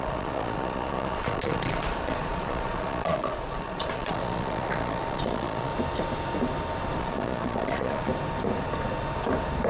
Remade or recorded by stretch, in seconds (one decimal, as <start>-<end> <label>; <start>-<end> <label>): 0.0-5.7 remade; 5.7-7.0 recorded; 7.0-8.1 remade; 8.1-9.7 recorded